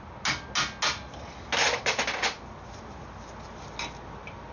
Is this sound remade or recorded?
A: recorded